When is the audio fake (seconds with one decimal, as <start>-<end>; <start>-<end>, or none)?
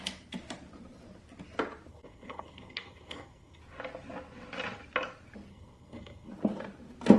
1.9-3.6; 5.5-6.3